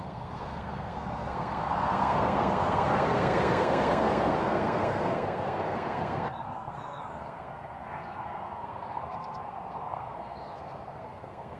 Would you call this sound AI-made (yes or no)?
yes